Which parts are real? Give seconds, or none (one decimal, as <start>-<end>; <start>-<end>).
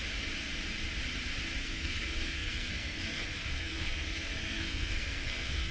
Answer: 0.0-1.6